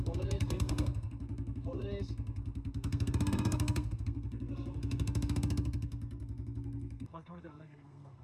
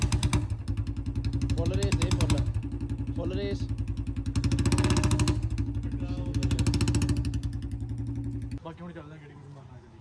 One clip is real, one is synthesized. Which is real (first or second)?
second